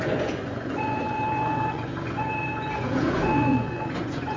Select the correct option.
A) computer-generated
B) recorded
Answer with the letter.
A